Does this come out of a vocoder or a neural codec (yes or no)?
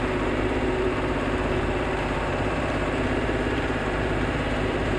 yes